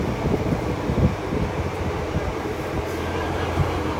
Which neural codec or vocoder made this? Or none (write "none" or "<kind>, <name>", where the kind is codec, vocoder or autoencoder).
vocoder, BigVGAN v2